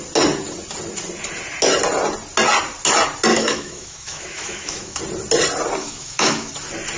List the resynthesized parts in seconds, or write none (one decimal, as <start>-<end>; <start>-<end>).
3.3-5.0; 5.8-6.5